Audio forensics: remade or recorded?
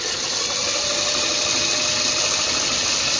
recorded